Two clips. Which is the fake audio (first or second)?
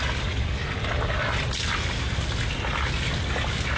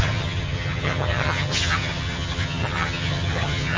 second